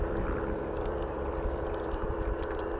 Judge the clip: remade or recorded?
remade